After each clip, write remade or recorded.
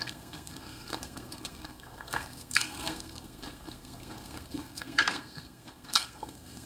remade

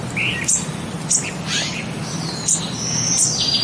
recorded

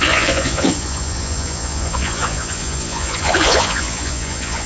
remade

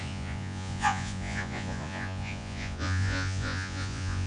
remade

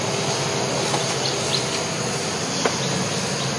recorded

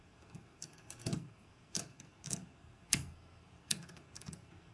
remade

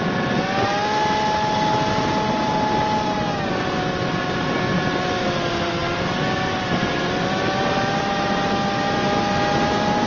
recorded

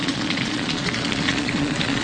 remade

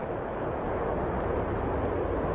recorded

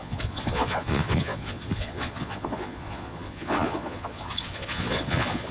remade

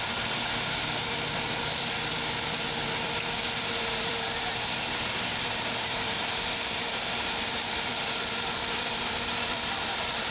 remade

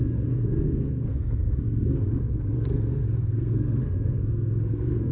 remade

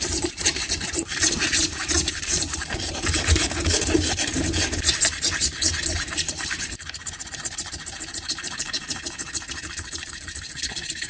remade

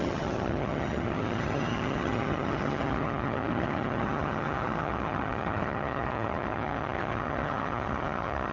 remade